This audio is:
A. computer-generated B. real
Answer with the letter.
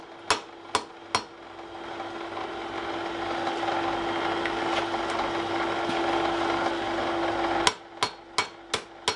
B